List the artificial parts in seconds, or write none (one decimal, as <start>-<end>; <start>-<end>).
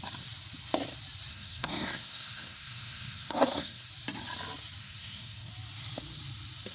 1.3-3.9; 4.8-5.5